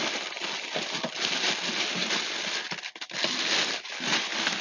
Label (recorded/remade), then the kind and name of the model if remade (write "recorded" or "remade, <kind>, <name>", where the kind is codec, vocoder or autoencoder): recorded